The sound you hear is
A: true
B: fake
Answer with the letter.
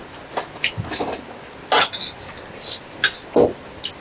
A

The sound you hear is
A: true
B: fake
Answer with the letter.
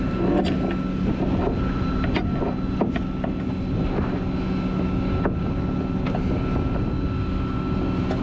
A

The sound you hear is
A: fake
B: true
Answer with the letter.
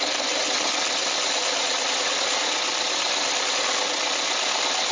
B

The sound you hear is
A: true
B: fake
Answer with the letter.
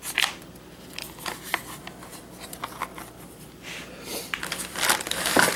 A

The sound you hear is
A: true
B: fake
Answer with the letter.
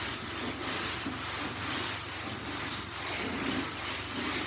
A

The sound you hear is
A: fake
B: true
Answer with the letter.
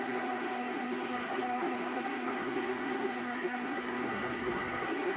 A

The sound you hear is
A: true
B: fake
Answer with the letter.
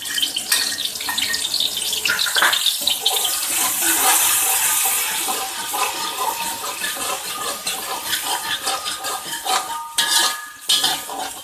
A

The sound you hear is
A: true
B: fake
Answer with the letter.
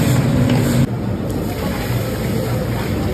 A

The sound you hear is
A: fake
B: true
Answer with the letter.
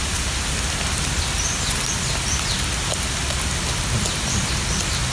B